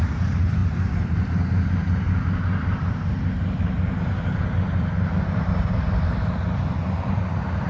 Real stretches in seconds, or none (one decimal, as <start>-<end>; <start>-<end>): 0.6-5.2